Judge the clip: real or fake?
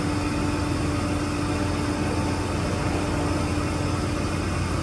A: real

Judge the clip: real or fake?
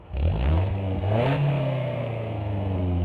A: fake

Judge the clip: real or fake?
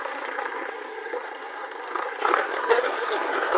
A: fake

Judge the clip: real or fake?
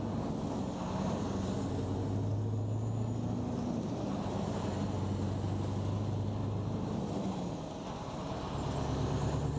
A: real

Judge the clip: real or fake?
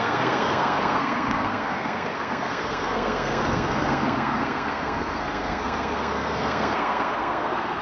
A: fake